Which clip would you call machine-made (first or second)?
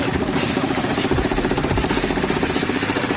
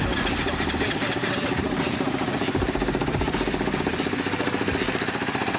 first